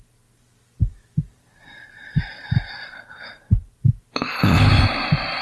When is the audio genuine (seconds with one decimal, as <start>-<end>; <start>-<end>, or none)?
0.0-1.0; 3.8-5.4